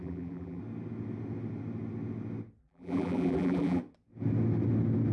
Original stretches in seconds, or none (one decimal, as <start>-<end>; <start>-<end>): 0.6-2.6; 3.8-5.1